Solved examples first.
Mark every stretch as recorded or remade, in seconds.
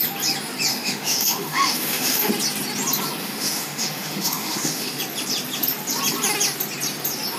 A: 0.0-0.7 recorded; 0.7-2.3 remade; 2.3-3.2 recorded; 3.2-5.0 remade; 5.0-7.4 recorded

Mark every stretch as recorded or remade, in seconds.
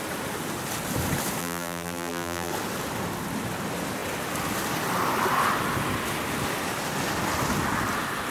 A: 0.0-1.4 recorded; 1.4-2.5 remade; 2.5-8.3 recorded